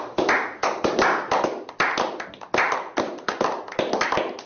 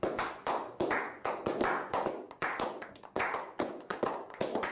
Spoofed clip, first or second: second